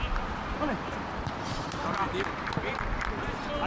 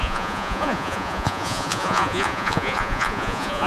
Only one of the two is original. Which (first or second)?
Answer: first